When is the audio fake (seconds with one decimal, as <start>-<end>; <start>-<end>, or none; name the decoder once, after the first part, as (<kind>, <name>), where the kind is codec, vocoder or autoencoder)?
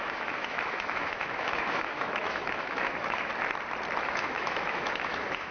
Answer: 0.0-3.3 (autoencoder, DAC-VAE); 4.0-5.5